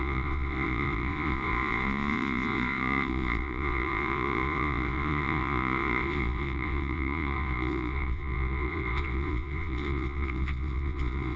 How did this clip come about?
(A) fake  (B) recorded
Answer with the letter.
A